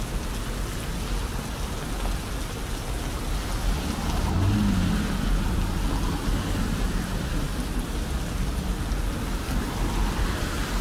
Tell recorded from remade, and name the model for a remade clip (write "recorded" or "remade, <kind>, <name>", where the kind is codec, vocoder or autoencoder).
recorded